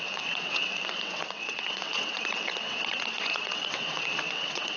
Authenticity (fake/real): fake